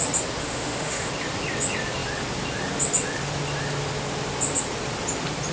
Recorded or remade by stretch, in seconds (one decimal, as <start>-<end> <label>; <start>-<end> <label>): 0.0-0.4 recorded; 0.4-1.1 remade; 1.1-5.5 recorded